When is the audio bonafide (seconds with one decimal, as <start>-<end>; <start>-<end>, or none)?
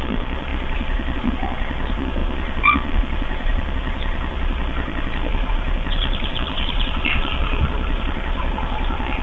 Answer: none